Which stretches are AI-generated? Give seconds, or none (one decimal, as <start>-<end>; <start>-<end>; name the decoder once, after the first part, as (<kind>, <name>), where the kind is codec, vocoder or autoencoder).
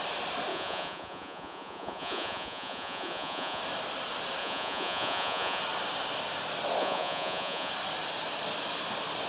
0.5-3.6 (vocoder, Vocos); 4.4-5.6; 6.8-7.7